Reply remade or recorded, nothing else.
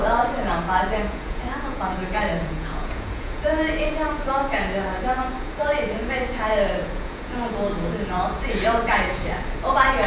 remade